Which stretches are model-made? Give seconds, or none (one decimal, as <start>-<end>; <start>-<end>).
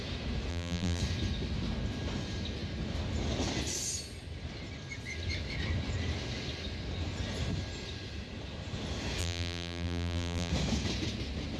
0.5-1.0; 9.2-10.5